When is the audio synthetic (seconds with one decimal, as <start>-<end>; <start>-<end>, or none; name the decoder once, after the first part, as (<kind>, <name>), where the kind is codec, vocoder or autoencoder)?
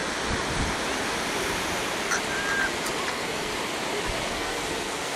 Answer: 3.1-3.5 (codec, SNAC); 4.2-5.2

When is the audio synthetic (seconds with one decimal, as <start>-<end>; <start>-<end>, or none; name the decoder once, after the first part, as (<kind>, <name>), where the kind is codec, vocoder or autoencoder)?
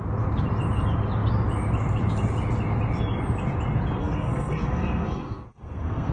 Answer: 4.0-6.1 (codec, SNAC)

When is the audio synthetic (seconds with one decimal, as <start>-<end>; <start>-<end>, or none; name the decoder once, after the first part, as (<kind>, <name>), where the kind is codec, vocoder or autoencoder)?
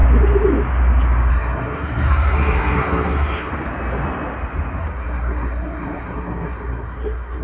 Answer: 1.3-3.5 (codec, SNAC); 4.8-7.4